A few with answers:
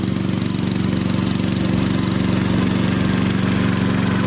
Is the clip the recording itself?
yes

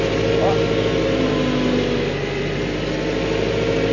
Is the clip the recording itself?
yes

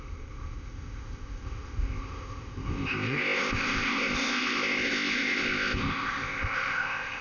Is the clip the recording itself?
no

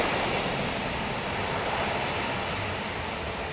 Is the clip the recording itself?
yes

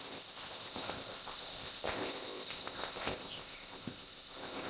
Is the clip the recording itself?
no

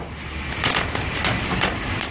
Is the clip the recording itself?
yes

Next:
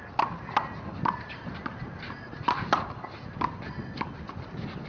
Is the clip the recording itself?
yes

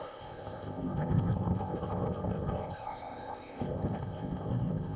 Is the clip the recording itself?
no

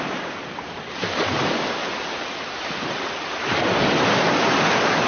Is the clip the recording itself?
yes